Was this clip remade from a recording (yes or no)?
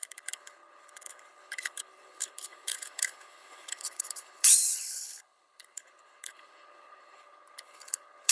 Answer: yes